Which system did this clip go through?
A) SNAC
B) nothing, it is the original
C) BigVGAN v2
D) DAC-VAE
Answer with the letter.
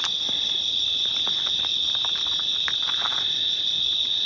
B